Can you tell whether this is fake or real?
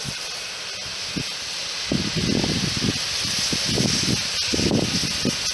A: real